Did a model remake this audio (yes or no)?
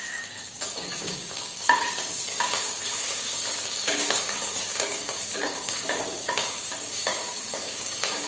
yes